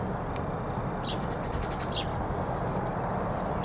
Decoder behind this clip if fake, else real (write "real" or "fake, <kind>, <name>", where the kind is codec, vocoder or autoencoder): real